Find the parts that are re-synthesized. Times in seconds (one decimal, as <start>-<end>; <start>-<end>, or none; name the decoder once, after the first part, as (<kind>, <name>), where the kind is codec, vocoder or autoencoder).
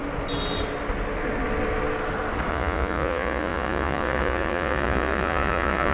2.5-5.9 (vocoder, Vocos)